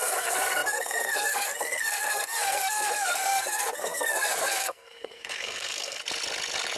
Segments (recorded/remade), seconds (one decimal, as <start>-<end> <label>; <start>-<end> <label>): 0.0-6.0 remade; 6.0-6.8 recorded